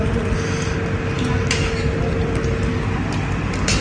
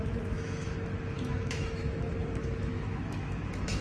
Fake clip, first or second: second